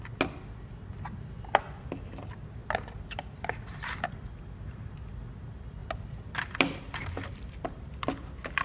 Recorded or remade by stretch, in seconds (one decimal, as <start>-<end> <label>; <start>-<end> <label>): 0.0-8.6 recorded